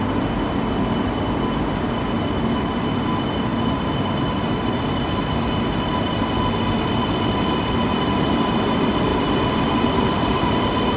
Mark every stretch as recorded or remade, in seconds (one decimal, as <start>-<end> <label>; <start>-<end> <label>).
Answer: 0.0-9.1 recorded; 9.1-11.0 remade